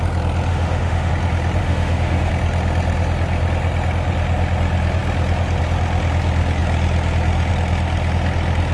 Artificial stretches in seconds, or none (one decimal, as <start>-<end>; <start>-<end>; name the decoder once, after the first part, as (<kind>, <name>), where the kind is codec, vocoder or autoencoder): 0.5-1.1 (autoencoder, DAC-VAE); 1.6-2.3